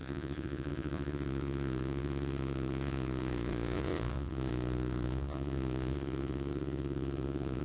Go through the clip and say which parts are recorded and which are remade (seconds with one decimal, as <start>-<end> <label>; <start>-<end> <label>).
0.0-7.6 remade